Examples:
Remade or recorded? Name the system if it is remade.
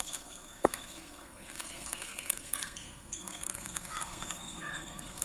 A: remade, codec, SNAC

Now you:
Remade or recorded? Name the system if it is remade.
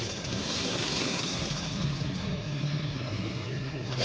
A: remade, codec, SNAC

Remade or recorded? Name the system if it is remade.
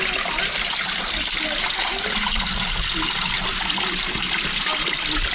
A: recorded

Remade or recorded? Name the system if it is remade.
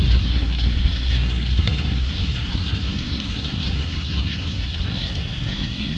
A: remade, codec, SNAC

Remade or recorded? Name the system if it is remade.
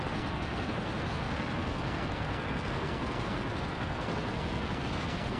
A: remade, codec, SNAC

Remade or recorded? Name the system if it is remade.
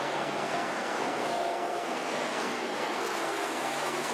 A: remade, codec, SNAC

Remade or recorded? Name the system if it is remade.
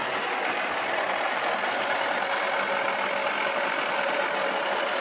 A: recorded